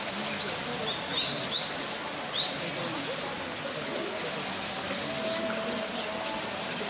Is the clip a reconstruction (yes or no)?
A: no